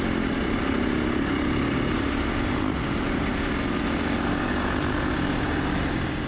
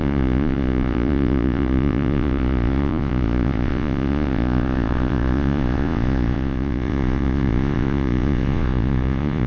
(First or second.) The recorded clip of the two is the first